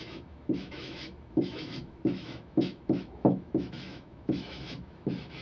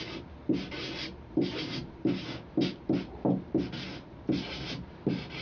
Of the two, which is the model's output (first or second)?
first